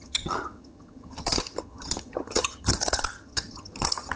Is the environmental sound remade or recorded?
remade